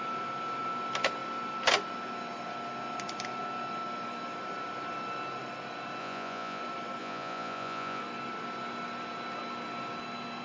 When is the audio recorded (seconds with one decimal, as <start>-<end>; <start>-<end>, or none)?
0.0-6.0; 6.6-7.0; 8.0-10.4